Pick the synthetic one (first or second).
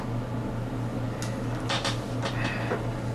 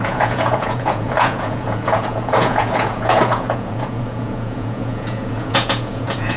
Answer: second